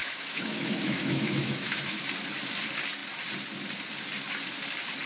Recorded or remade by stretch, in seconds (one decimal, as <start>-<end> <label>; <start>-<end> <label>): 0.0-2.0 remade; 2.0-5.1 recorded